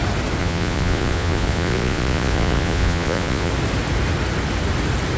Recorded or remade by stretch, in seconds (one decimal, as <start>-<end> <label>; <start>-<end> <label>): 0.0-0.4 recorded; 0.4-3.5 remade; 3.5-5.2 recorded